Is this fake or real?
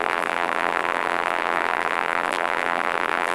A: fake